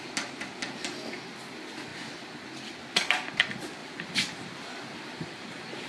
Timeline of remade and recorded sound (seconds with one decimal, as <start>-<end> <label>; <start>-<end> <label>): 0.0-3.8 recorded; 3.8-5.9 remade